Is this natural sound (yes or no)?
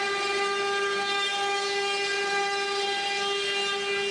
yes